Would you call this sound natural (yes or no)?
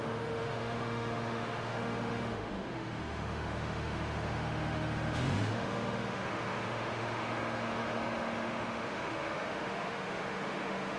no